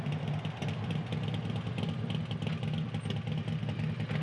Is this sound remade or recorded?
recorded